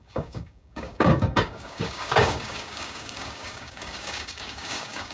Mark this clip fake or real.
fake